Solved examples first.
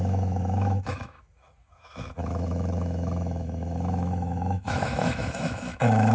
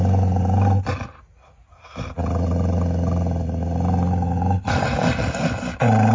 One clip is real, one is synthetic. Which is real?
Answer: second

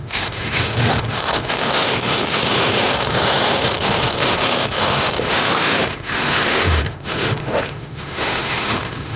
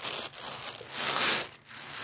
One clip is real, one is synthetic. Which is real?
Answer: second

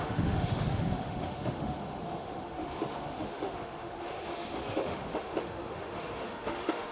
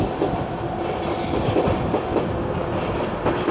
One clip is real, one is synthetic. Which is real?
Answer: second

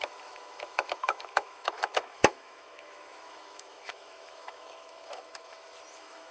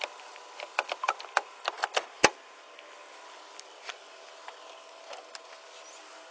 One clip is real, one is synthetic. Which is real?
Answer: second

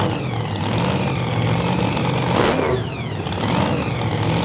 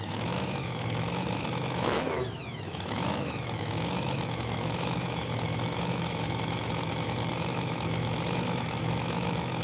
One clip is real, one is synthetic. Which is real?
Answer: first